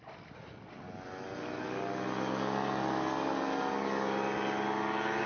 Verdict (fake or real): real